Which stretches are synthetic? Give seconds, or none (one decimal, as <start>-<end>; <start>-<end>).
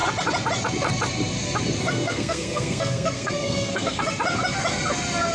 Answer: 1.8-4.0